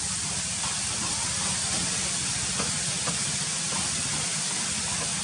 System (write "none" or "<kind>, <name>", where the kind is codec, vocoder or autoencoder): vocoder, BigVGAN v2